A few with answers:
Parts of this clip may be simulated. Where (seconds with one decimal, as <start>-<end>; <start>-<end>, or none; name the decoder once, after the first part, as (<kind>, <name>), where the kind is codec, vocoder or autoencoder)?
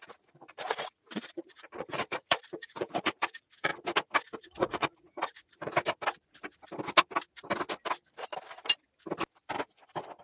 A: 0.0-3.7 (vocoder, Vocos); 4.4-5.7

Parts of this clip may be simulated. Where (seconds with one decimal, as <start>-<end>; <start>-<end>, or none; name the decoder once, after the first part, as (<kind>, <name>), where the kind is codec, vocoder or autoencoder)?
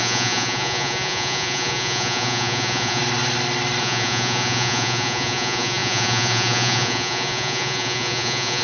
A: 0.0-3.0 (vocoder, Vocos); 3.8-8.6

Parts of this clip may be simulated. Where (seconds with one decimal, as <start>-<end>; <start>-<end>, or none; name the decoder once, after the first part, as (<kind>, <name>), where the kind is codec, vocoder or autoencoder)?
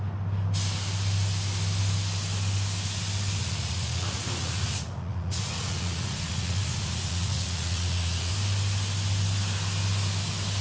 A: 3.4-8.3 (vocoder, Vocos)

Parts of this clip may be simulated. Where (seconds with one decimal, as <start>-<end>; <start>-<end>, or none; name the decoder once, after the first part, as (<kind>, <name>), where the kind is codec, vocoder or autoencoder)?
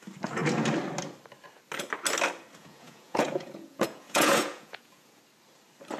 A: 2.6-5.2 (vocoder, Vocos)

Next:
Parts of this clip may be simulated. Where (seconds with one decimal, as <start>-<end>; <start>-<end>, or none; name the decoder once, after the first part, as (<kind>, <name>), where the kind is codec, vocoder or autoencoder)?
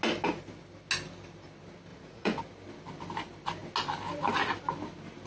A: 1.9-2.4 (vocoder, Vocos)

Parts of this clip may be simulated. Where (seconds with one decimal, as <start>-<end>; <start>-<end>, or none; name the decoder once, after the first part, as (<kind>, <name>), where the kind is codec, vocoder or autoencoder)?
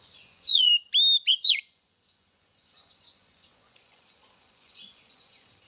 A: 0.0-0.7 (vocoder, Vocos); 1.3-5.7